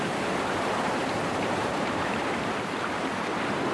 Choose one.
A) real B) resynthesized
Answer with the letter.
B